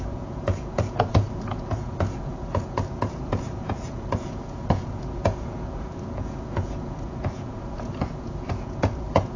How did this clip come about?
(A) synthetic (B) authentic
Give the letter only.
A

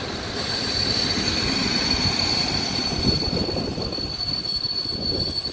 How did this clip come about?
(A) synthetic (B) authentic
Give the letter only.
B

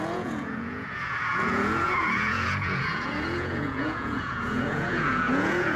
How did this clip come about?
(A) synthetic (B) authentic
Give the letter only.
A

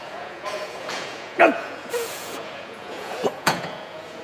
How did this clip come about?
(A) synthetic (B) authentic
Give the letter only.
A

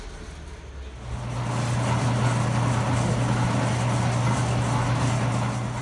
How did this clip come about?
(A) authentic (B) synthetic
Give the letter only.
A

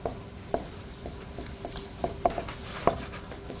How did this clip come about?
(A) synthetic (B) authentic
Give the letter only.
B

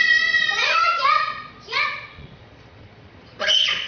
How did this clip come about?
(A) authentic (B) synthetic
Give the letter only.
B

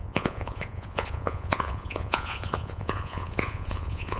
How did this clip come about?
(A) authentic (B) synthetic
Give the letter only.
B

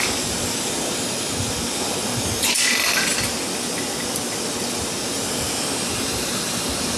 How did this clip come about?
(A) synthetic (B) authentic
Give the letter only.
B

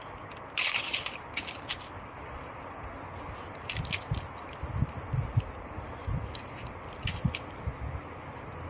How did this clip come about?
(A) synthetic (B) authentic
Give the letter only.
B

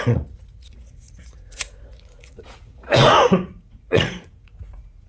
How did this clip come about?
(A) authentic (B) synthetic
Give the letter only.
B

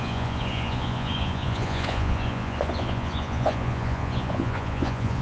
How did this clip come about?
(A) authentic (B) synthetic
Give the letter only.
B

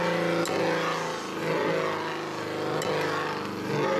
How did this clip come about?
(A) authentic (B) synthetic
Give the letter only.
A